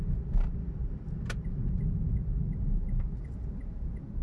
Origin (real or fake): real